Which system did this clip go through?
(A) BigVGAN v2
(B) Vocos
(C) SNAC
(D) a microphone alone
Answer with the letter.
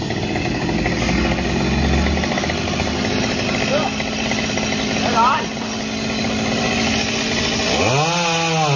D